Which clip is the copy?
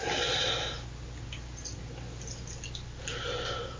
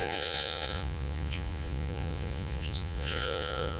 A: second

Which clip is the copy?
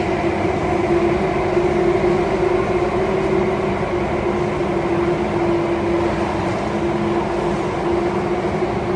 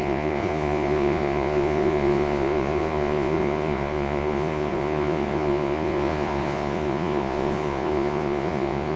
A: second